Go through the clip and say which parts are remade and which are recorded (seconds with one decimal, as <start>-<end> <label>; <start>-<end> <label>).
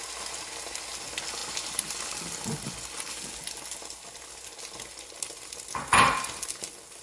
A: 0.0-7.0 recorded